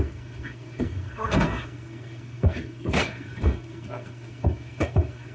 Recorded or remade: remade